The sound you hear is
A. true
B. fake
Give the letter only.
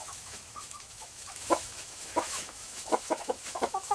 B